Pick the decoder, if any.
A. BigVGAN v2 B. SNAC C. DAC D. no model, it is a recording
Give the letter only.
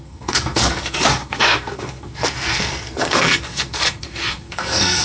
B